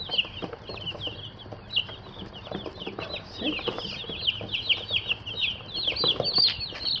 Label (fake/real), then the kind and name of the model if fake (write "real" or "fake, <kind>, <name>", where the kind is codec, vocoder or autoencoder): real